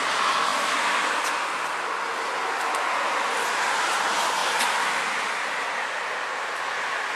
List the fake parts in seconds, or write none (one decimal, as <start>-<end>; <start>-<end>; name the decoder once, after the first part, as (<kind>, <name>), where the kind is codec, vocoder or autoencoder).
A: none